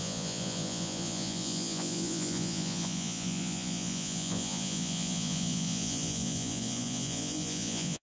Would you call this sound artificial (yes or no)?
yes